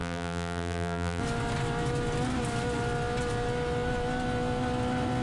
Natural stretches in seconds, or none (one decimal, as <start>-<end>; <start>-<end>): 1.2-5.2